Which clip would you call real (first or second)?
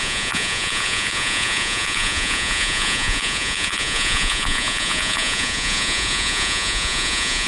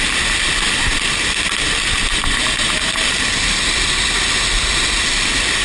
second